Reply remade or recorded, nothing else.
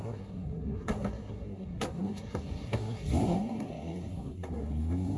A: remade